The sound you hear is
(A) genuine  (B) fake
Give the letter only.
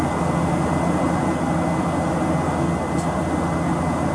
A